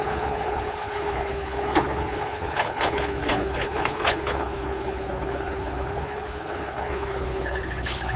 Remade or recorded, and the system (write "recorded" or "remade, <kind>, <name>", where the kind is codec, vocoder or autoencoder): remade, codec, HILCodec